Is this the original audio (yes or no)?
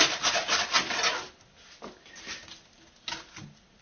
yes